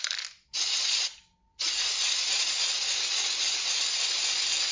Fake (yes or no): no